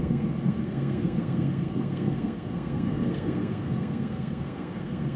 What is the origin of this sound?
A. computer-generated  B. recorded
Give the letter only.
A